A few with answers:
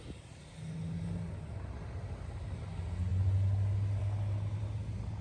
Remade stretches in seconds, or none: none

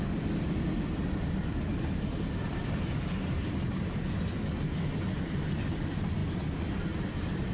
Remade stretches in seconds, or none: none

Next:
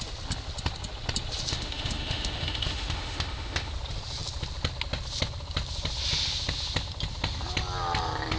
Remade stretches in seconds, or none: 1.5-3.7 (autoencoder, DAC-VAE)

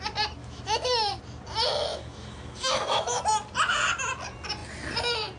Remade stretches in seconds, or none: 0.4-1.2 (autoencoder, DAC-VAE); 1.9-3.2

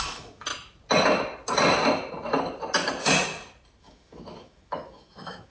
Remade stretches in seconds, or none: 0.0-0.5 (autoencoder, DAC-VAE); 3.8-5.5

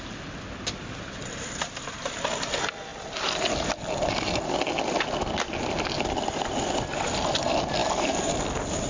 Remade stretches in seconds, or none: none

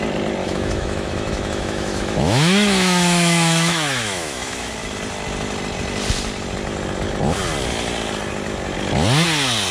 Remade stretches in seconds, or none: 0.4-4.7 (autoencoder, DAC-VAE)

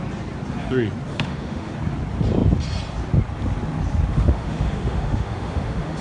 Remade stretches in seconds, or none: 1.1-1.7 (autoencoder, DAC-VAE); 4.1-6.0